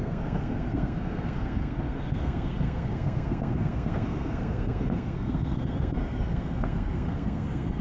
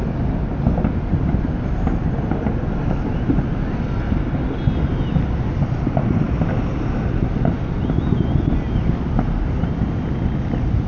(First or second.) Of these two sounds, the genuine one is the second